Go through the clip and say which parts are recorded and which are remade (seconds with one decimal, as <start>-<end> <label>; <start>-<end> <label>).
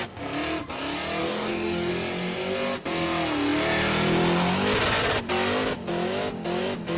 0.0-1.2 recorded; 1.2-1.9 remade; 1.9-7.0 recorded